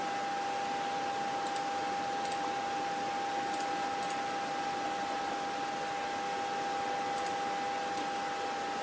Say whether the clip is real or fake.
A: real